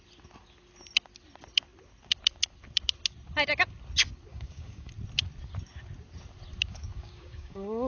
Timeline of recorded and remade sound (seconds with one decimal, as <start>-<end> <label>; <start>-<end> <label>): 0.0-4.3 recorded; 4.3-4.9 remade; 4.9-6.7 recorded; 6.7-7.9 remade